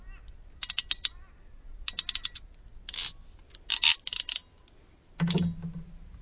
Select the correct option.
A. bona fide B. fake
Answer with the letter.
A